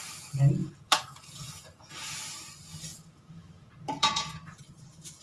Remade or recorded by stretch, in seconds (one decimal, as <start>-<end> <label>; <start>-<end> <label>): 0.0-0.6 recorded; 0.6-2.2 remade; 2.2-2.9 recorded; 2.9-4.6 remade; 4.6-5.2 recorded